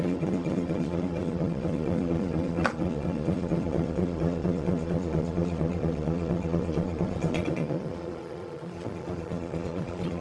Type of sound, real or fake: fake